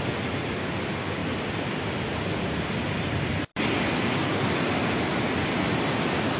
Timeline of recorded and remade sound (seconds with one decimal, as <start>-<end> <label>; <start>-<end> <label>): 0.0-1.2 recorded; 1.2-2.2 remade; 2.2-6.4 recorded